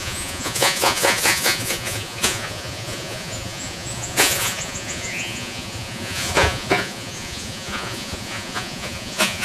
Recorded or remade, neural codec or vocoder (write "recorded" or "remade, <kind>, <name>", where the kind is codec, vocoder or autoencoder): remade, vocoder, Vocos